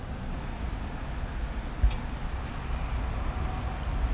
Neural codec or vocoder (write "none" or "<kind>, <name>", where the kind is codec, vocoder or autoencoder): none